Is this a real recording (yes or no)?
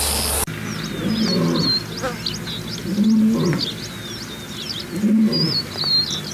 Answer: yes